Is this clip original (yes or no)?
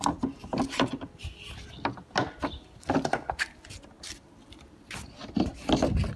yes